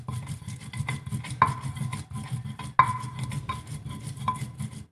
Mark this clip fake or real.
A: real